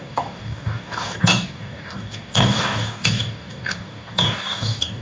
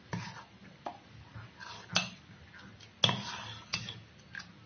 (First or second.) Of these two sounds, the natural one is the second